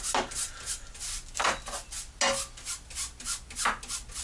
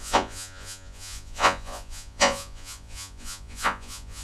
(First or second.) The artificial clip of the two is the second